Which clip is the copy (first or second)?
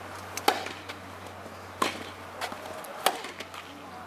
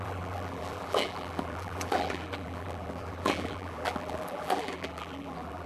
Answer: second